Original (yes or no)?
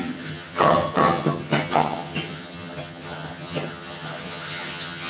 no